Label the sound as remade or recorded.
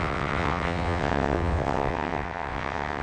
remade